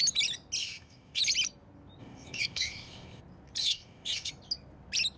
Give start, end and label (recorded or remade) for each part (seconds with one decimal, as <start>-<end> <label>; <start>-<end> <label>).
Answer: 0.0-0.6 recorded; 0.6-1.2 remade; 1.2-2.0 recorded; 2.0-3.2 remade; 3.2-3.6 recorded; 3.6-4.3 remade; 4.3-5.2 recorded